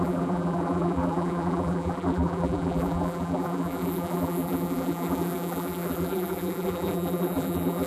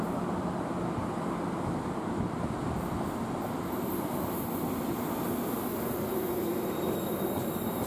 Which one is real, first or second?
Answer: second